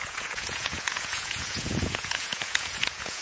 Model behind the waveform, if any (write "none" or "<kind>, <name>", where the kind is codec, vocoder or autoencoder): vocoder, Vocos